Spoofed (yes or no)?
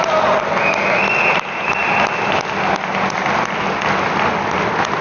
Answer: no